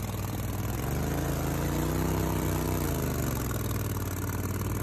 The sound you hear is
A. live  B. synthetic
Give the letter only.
A